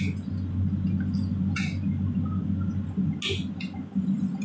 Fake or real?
real